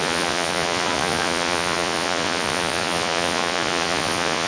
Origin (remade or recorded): remade